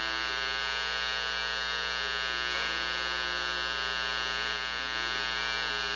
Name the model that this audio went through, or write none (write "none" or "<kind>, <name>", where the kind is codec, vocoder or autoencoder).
none